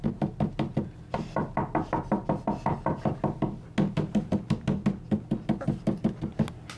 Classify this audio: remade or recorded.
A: recorded